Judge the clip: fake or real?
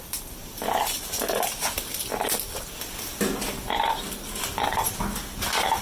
real